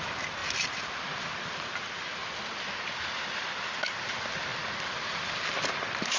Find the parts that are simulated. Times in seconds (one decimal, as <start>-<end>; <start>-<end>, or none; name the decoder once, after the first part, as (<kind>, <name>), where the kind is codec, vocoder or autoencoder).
none